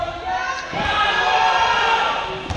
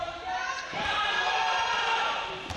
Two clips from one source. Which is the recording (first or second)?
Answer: first